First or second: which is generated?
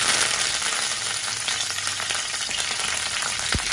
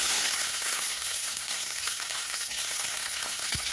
second